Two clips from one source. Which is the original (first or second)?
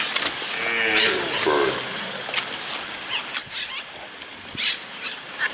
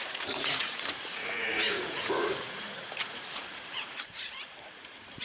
first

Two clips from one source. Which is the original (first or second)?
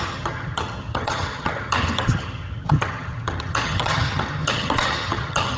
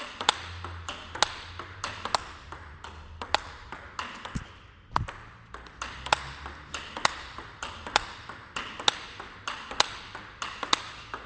second